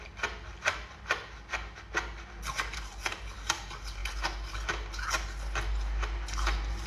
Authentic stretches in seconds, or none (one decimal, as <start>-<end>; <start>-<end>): 0.0-6.9